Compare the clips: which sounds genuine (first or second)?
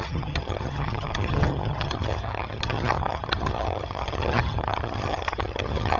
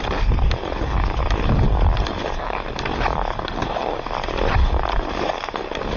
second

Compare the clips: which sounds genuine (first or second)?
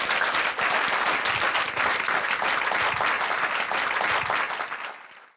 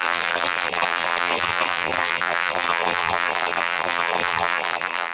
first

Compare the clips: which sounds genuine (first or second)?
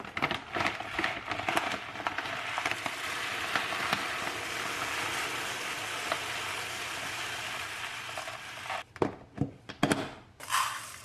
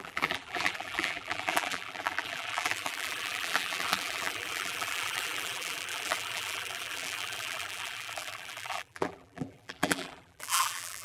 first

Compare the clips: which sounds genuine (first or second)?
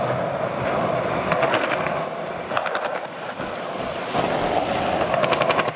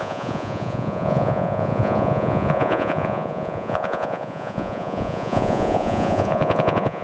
first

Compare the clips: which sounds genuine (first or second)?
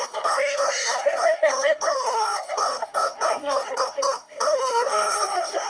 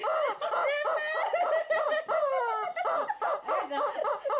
second